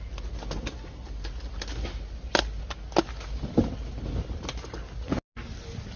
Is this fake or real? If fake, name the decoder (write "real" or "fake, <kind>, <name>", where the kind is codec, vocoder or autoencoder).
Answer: real